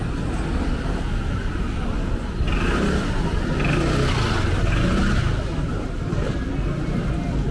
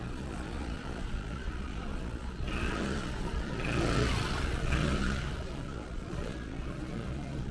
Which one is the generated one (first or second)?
second